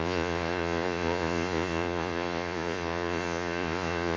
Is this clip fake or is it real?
fake